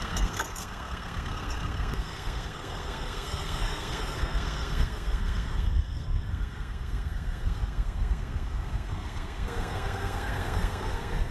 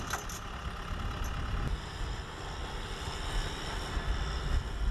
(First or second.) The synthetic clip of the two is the first